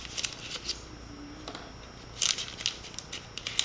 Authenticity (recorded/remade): recorded